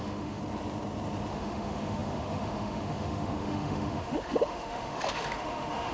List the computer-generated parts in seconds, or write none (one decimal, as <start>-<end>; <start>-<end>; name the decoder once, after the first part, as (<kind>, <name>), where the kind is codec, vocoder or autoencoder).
0.0-0.4 (autoencoder, DAC-VAE); 1.3-5.9